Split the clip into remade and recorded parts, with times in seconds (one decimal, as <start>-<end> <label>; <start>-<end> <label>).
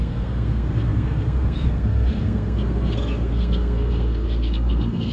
0.0-5.1 remade